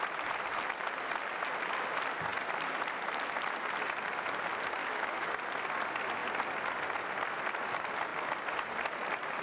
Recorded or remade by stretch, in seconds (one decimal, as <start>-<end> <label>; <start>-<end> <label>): 0.0-4.8 recorded; 4.8-5.3 remade; 5.3-9.4 recorded